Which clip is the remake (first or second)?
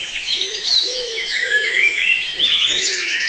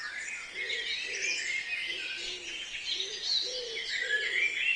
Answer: first